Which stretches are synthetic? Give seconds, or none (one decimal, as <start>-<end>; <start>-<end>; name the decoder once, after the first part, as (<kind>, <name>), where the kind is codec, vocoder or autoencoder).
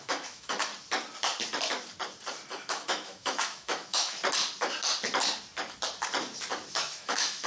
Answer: 0.0-0.7 (autoencoder, DAC-VAE); 2.6-4.2; 6.7-7.5